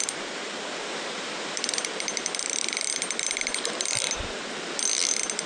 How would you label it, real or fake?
real